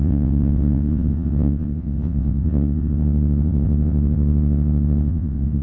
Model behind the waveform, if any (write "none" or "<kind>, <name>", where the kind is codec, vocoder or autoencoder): vocoder, WaveNeXt